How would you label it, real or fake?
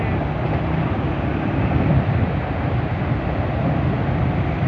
real